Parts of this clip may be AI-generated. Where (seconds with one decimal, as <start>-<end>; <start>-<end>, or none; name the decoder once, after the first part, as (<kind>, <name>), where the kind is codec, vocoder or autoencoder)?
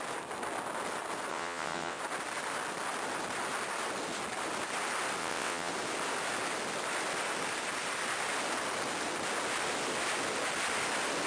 1.3-2.0 (vocoder, WaveNeXt); 5.2-5.7